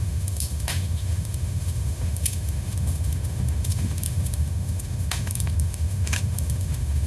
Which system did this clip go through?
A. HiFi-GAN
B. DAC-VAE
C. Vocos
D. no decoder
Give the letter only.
B